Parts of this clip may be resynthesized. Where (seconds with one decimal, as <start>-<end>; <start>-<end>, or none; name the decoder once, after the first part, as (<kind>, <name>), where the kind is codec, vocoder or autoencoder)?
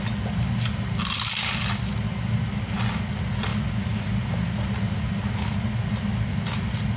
none